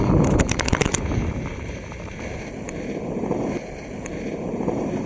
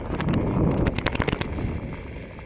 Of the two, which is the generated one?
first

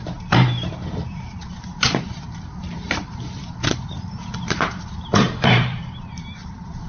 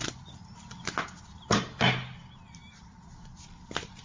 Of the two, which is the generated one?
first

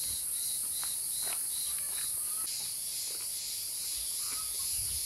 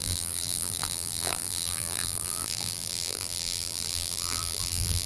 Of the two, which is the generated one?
second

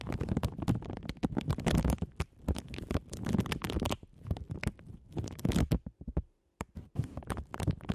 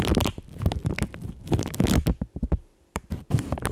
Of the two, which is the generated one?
second